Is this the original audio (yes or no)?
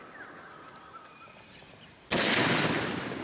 yes